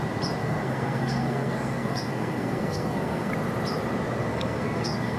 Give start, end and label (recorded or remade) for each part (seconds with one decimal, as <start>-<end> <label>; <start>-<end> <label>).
0.0-0.4 recorded; 0.4-3.3 remade; 3.3-4.3 recorded; 4.3-5.2 remade

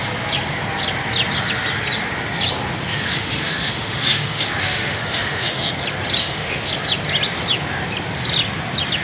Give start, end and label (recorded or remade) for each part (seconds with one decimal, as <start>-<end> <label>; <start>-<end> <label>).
0.0-2.9 recorded; 2.9-5.7 remade; 5.7-6.2 recorded; 6.2-6.7 remade; 6.7-9.0 recorded

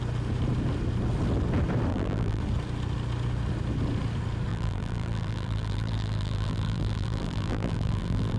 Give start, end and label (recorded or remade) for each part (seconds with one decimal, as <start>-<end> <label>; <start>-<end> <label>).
0.0-1.9 recorded; 1.9-2.4 remade; 2.4-4.5 recorded; 4.5-8.4 remade

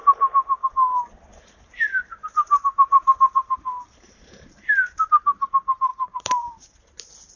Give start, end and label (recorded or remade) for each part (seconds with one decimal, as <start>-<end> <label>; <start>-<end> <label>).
0.0-1.3 recorded; 1.3-4.7 remade; 4.7-5.9 recorded; 5.9-6.5 remade; 6.5-7.4 recorded